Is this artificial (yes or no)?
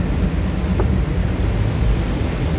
no